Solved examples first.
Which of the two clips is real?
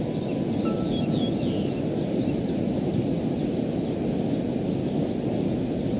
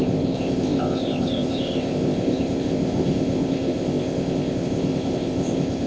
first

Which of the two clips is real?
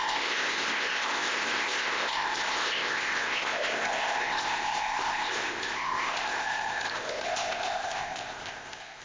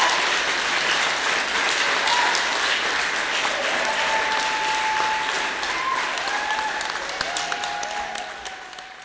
second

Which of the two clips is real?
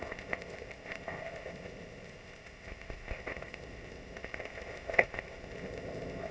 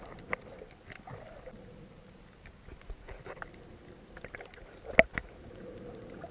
second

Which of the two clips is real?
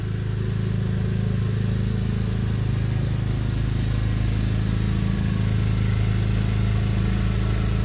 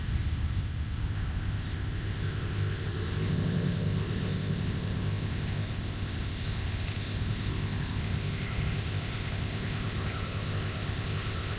first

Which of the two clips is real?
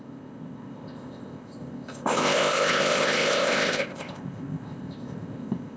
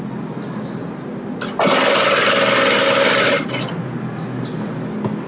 second